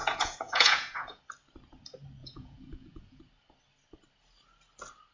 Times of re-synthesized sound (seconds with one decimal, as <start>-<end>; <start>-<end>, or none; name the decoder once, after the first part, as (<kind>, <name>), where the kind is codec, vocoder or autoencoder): 0.0-1.2 (vocoder, Vocos); 2.2-3.2